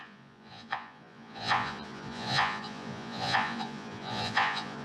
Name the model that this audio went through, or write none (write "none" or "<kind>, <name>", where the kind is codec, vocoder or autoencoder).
vocoder, Vocos